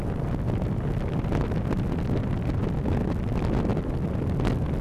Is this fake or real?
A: real